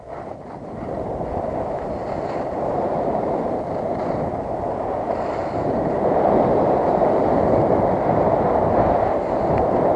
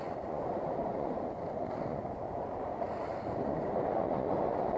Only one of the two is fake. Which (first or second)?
second